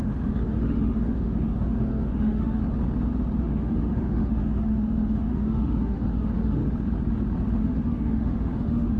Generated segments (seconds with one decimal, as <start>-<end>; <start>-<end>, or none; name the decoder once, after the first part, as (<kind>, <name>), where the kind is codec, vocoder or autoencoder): 0.0-2.6 (autoencoder, DAC-VAE); 3.4-6.6; 7.6-9.0